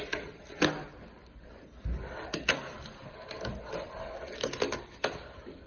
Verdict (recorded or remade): recorded